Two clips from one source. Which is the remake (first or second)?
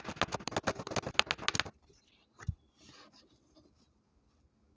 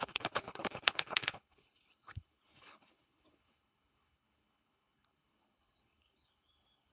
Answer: second